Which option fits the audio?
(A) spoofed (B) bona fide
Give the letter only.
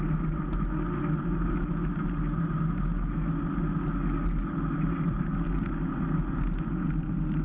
B